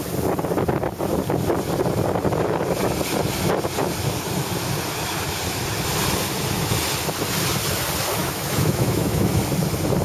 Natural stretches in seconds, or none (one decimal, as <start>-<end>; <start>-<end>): 0.0-8.2; 9.4-10.0